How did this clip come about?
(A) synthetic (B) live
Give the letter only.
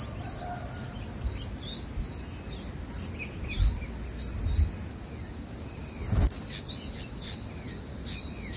B